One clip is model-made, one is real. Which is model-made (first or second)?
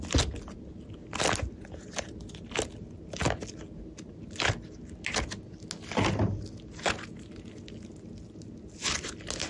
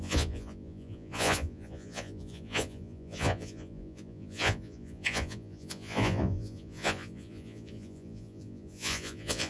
second